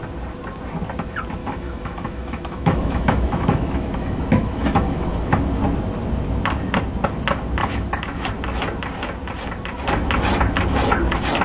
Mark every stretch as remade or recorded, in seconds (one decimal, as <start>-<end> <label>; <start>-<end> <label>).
0.0-1.4 recorded; 1.4-5.6 remade; 5.6-7.6 recorded; 7.6-8.3 remade; 8.3-11.4 recorded